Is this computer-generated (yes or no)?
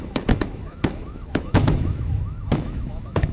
yes